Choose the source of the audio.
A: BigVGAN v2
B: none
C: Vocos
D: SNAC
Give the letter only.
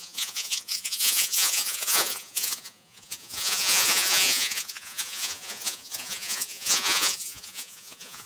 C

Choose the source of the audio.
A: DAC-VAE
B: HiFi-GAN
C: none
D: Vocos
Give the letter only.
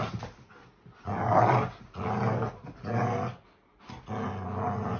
C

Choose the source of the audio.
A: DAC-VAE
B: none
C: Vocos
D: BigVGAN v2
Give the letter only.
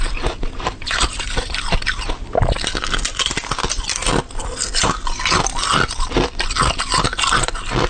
B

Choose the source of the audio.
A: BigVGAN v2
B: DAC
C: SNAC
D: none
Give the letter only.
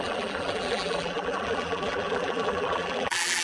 A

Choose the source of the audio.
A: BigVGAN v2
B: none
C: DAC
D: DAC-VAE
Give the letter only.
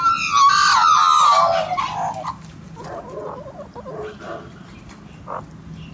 B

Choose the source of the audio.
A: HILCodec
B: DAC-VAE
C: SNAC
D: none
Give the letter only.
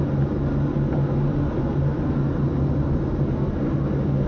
D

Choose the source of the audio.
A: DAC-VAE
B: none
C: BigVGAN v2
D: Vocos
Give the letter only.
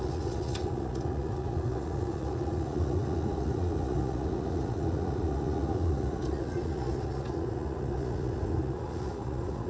D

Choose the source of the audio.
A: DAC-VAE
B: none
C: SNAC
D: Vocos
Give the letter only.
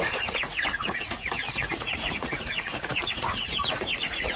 D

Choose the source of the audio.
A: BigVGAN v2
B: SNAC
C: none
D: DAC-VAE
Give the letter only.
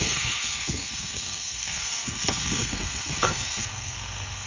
B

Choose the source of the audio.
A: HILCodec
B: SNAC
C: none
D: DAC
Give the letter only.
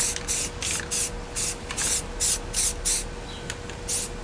C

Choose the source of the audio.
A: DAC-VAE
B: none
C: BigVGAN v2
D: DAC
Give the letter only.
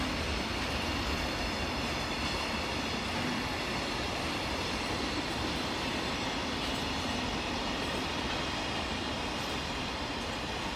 B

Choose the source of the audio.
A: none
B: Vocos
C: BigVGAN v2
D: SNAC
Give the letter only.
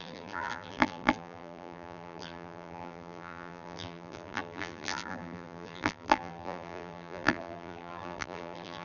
C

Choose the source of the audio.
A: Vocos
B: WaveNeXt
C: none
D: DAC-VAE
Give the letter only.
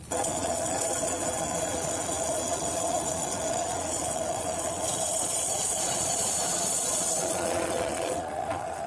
A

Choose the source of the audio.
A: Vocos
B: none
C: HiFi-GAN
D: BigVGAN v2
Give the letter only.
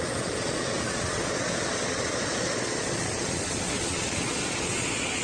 A